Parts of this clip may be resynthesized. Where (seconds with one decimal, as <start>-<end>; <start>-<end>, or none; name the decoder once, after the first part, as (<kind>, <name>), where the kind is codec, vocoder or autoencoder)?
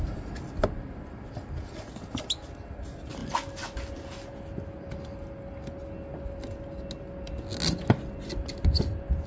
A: none